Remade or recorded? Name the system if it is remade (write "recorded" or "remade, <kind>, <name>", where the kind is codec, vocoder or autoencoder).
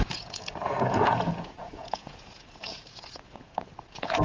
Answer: remade, vocoder, Vocos